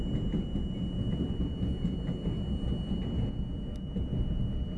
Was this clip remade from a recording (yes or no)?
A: no